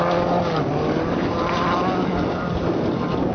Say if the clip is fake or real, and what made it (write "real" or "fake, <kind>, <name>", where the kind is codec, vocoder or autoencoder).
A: real